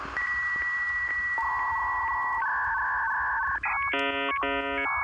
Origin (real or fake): real